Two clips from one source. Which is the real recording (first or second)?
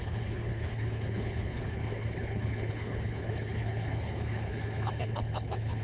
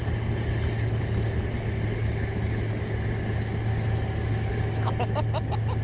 second